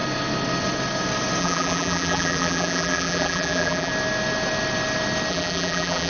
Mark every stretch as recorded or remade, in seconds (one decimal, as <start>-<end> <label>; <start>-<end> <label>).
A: 0.0-1.4 recorded; 1.4-3.9 remade; 3.9-5.3 recorded; 5.3-6.1 remade